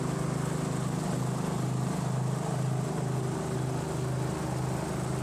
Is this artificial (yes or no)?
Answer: no